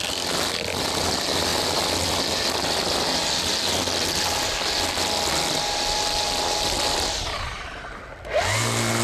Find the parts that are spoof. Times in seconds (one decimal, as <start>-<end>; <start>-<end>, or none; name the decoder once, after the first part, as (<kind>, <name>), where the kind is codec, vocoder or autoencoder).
none